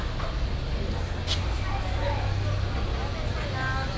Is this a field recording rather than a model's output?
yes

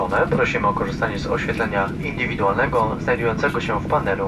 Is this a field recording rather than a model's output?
yes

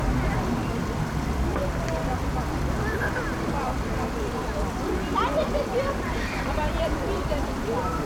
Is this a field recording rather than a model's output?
no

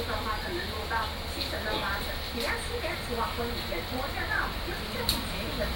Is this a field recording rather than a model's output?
yes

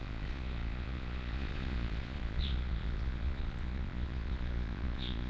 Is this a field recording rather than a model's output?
no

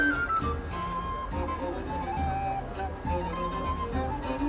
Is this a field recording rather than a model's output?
yes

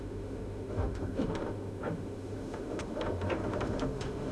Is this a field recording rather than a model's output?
no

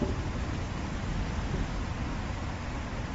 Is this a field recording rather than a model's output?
yes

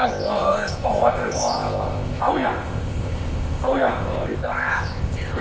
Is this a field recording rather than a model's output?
no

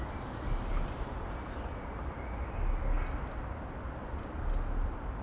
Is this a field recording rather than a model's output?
yes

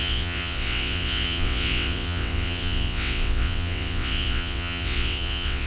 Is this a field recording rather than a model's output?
no